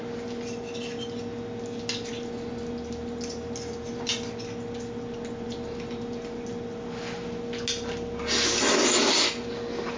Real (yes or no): yes